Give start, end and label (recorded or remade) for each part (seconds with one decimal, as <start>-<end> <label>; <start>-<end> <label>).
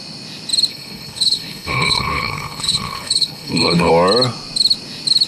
0.0-0.7 recorded; 0.7-3.9 remade; 3.9-5.3 recorded